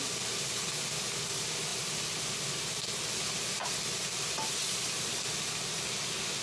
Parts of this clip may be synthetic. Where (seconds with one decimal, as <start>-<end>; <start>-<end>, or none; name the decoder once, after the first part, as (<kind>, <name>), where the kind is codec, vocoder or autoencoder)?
none